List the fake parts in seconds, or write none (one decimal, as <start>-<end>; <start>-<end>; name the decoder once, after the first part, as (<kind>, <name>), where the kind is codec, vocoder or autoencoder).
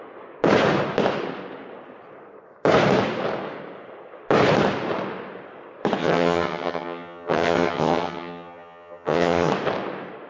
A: 6.0-9.5 (vocoder, HiFi-GAN)